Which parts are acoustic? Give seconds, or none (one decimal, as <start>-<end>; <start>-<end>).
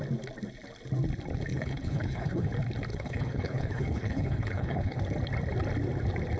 0.0-1.5; 2.5-2.9; 5.0-6.4